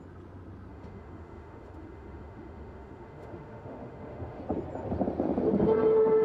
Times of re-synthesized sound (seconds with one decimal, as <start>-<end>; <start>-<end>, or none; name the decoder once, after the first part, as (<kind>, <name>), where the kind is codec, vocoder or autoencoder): 0.7-4.4 (autoencoder, DAC-VAE)

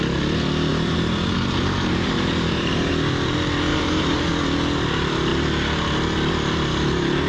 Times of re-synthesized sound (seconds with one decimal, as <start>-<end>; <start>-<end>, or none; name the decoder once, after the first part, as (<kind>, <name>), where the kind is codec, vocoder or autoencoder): 0.7-2.9 (vocoder, BigVGAN v2); 3.7-4.3

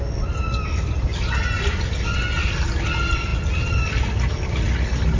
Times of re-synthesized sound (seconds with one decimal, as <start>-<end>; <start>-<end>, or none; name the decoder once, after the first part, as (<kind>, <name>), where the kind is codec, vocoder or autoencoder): none

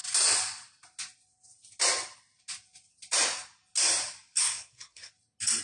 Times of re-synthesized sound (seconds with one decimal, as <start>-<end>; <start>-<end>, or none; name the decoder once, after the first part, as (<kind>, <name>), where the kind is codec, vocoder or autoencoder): 4.4-5.1 (codec, SNAC)

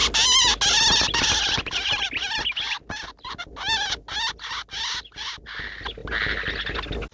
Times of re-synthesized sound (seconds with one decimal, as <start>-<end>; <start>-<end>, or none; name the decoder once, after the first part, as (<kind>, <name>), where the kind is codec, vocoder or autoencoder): none

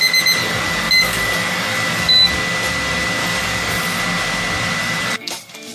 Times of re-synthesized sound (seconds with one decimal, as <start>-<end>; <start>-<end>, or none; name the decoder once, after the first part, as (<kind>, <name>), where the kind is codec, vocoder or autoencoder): 0.4-2.3 (codec, DAC); 3.2-4.0; 4.8-5.7